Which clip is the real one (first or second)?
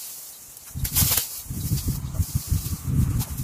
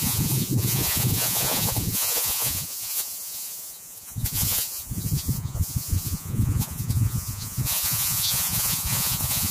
first